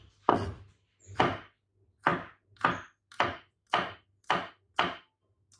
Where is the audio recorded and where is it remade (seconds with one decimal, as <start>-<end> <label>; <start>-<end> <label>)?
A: 0.0-5.6 recorded